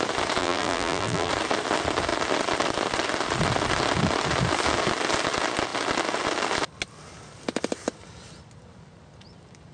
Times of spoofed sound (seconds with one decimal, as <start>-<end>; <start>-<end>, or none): 0.4-1.3